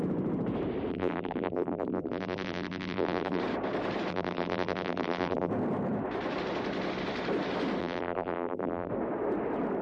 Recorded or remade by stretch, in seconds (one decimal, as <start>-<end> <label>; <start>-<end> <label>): 0.0-0.9 recorded; 0.9-3.4 remade; 3.4-4.1 recorded; 4.1-5.5 remade; 5.5-7.8 recorded; 7.8-8.9 remade; 8.9-9.8 recorded